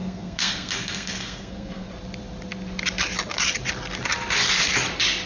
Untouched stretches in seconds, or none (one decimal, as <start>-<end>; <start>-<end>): 1.9-5.3